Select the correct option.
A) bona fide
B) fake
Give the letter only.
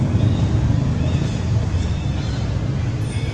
A